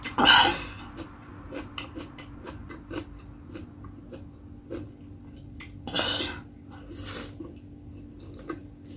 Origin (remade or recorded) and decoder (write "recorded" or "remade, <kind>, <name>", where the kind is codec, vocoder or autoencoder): recorded